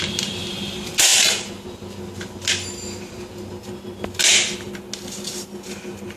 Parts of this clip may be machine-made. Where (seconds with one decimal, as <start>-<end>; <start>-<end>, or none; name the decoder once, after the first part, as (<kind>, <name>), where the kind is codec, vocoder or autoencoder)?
none